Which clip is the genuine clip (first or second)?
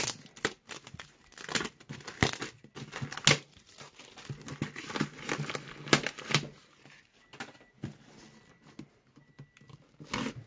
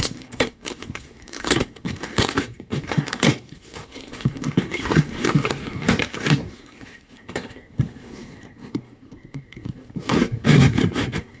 first